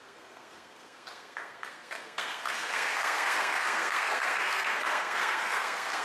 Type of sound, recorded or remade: remade